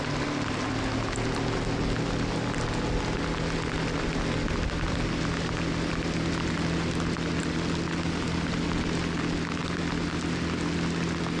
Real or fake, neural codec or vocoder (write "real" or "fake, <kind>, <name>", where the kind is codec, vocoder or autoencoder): real